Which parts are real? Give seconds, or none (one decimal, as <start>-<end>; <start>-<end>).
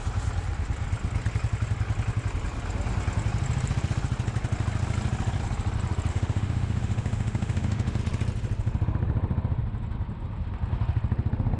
0.0-6.1; 8.0-11.6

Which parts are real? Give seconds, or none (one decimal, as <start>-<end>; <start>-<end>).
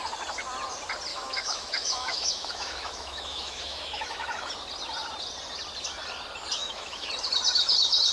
0.0-1.1; 4.5-6.6; 7.1-8.1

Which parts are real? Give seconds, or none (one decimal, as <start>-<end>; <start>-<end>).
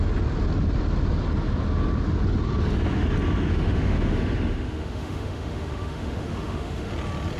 0.0-3.5; 6.9-7.4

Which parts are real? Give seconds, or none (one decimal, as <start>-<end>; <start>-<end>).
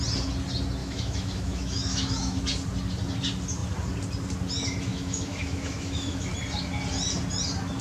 0.0-0.8; 2.4-4.9; 6.3-7.8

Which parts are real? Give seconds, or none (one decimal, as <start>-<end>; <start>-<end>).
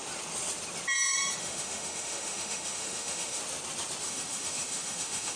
0.0-1.4; 3.4-4.0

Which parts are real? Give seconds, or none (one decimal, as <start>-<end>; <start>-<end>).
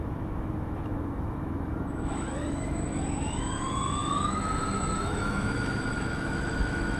none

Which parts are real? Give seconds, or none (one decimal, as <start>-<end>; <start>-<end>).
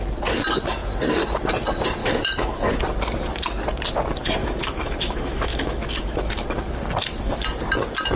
0.0-2.0; 2.8-4.4; 6.3-8.2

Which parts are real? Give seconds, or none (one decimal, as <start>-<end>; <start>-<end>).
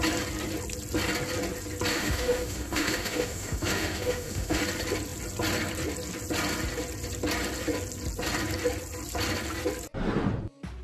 0.0-1.9; 4.6-10.8